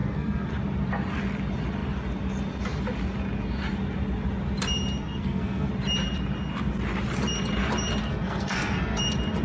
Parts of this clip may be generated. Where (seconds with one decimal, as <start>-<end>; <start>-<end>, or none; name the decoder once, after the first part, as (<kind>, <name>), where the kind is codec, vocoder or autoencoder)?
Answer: 0.0-0.5 (codec, SNAC); 5.0-5.7; 8.0-9.0